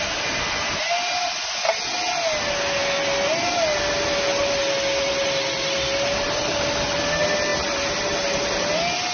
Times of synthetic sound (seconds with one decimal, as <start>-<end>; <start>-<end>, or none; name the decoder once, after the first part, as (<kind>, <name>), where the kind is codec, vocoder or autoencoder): 7.5-8.0 (vocoder, BigVGAN v2)